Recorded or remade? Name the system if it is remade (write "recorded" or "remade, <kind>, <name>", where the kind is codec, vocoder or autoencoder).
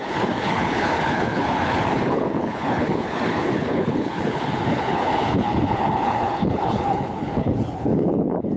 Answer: remade, codec, HILCodec